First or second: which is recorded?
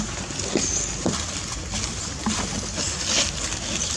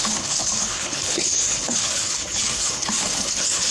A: first